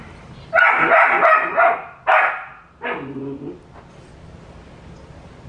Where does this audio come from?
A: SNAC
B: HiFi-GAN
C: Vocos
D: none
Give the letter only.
D